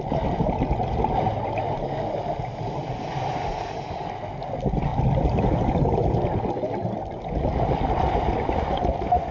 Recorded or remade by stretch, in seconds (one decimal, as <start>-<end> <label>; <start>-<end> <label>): 0.0-9.3 recorded